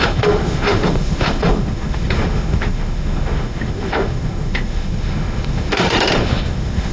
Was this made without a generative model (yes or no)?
no